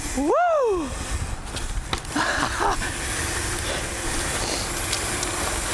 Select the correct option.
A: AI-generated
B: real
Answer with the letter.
B